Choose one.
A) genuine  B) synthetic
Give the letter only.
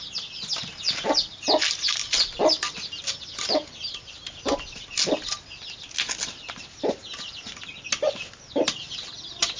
A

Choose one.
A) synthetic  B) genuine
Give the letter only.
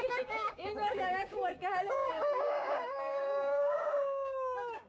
A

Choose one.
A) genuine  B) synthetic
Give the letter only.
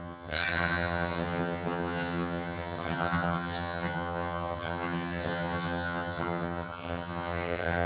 B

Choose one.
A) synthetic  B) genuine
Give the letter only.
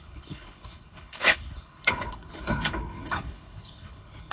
A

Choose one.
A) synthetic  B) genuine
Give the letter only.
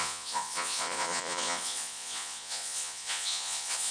A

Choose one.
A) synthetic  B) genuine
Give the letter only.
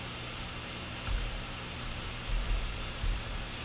A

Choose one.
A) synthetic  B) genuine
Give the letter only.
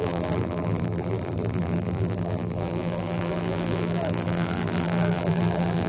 A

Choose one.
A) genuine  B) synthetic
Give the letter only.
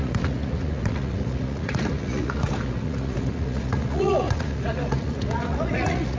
B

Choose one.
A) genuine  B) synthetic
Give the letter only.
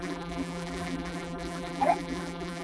B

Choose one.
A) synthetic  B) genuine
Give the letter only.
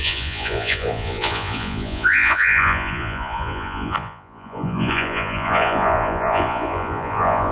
A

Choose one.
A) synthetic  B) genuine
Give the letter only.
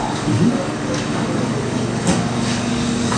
A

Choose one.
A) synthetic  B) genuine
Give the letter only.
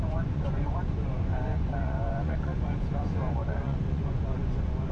A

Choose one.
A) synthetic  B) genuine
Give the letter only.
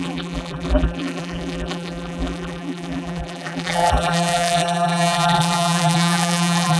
A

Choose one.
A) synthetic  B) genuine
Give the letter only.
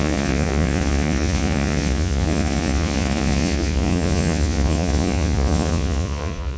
A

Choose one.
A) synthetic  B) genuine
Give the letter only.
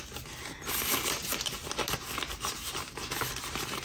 B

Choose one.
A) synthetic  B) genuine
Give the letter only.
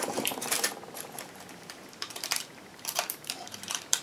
A